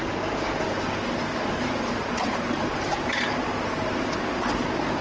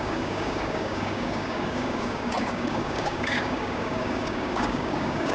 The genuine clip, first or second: first